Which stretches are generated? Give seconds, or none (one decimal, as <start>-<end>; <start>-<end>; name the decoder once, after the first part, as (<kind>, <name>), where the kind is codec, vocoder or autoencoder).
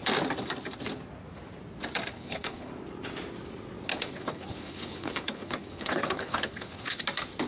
2.1-2.7 (codec, HILCodec); 3.9-7.0